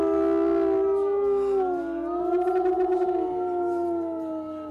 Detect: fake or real real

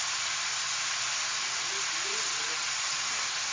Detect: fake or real real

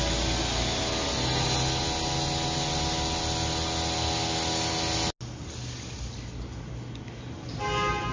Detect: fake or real real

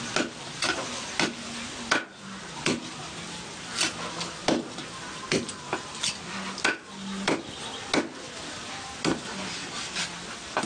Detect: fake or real real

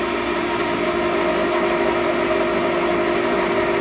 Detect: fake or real real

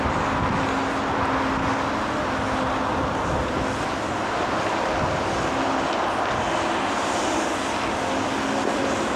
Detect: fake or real real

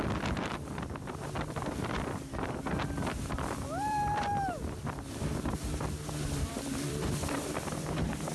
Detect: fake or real fake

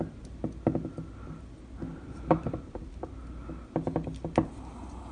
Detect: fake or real real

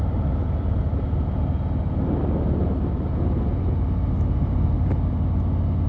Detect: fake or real real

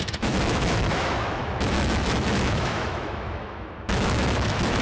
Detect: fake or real fake